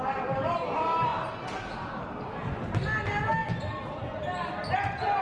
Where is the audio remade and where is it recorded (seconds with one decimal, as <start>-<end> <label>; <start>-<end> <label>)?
0.0-5.2 recorded